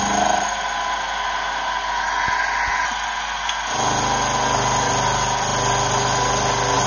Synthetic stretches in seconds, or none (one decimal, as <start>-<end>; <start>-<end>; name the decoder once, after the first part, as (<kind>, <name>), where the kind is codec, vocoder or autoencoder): none